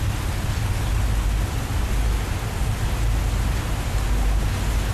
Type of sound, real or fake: real